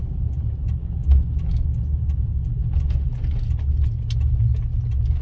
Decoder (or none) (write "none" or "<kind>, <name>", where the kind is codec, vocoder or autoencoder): none